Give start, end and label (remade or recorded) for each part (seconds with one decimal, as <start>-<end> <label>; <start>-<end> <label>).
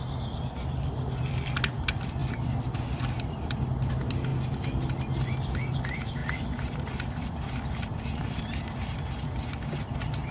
0.0-2.2 recorded; 2.2-3.0 remade; 3.0-10.3 recorded